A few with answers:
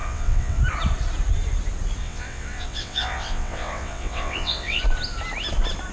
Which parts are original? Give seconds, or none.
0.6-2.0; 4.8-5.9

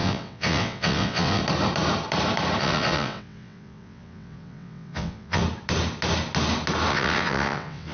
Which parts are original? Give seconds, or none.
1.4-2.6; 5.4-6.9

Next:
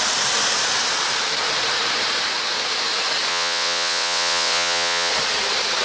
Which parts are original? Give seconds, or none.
0.0-3.3; 5.1-5.8